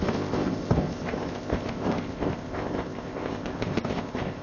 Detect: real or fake fake